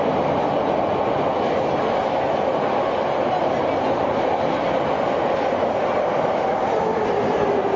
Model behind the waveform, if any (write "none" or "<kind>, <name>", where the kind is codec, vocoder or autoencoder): none